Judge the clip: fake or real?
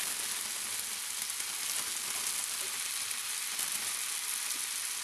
real